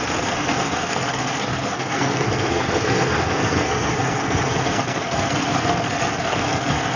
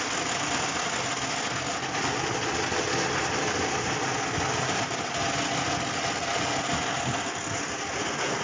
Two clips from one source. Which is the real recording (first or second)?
second